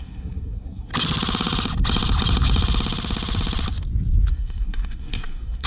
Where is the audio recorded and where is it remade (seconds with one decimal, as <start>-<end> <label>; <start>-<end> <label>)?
0.0-0.9 remade; 0.9-4.3 recorded; 4.3-5.7 remade